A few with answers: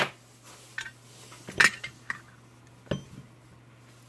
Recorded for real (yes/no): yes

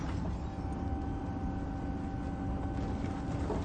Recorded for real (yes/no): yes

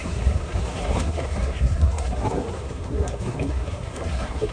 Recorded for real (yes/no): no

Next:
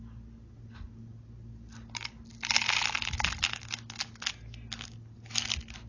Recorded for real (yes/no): yes